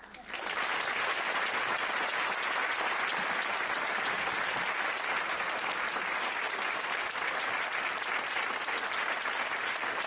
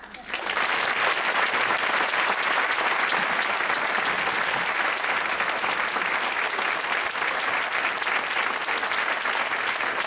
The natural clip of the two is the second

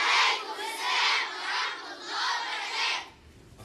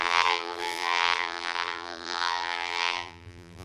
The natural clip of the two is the first